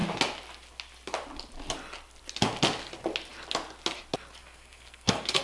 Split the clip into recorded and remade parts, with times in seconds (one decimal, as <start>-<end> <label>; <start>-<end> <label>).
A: 0.0-4.4 recorded; 4.4-5.4 remade